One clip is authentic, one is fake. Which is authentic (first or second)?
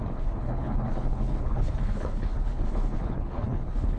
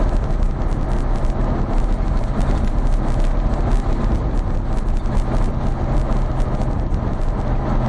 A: second